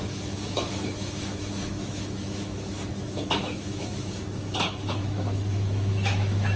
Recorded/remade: remade